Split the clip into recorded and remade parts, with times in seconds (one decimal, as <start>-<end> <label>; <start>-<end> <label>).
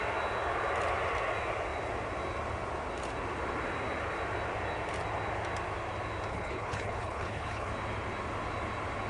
0.0-6.3 recorded; 6.3-7.7 remade; 7.7-9.1 recorded